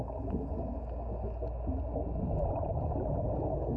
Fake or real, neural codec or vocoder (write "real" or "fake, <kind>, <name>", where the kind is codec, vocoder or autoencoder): real